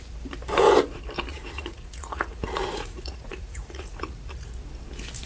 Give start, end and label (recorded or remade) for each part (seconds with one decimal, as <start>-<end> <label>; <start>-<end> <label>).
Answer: 0.0-1.3 recorded; 1.3-4.5 remade; 4.5-5.3 recorded